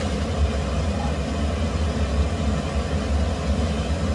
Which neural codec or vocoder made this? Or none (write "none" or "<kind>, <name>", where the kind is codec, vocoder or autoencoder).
none